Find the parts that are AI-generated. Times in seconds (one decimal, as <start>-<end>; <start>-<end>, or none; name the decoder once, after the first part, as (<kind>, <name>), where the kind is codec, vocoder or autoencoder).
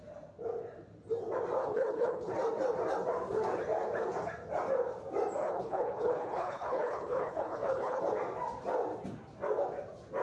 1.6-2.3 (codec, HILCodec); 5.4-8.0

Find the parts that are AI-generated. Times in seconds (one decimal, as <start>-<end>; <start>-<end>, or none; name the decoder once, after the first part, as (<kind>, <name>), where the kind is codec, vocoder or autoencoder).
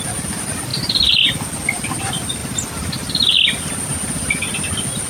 none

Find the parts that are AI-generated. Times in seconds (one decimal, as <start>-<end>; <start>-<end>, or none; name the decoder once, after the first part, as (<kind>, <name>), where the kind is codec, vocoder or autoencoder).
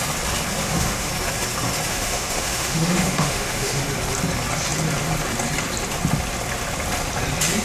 0.6-1.1 (autoencoder, DAC-VAE); 1.9-3.8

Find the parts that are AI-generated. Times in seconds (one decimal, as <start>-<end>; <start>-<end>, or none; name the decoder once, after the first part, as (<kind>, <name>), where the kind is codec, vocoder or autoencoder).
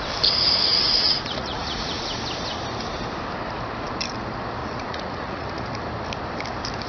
0.7-2.0 (vocoder, Vocos); 4.6-5.7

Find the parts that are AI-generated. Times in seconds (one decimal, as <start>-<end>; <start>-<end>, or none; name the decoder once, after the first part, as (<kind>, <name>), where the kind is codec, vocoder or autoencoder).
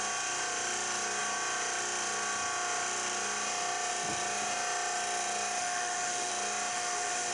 5.6-6.3 (autoencoder, DAC-VAE); 6.7-7.3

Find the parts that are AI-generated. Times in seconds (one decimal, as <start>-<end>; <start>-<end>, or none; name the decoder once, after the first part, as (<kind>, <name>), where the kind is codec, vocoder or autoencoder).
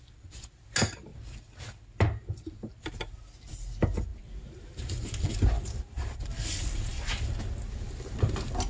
none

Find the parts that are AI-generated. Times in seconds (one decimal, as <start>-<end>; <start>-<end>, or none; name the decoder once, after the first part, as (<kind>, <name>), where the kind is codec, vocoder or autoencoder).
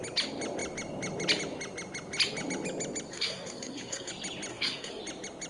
3.1-4.1 (codec, SNAC); 4.5-5.0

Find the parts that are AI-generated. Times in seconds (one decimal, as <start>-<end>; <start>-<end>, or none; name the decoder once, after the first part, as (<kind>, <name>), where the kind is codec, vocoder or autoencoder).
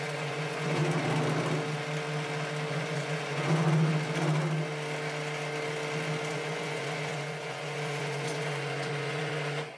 0.0-0.8 (vocoder, Vocos); 2.7-3.9; 6.3-9.8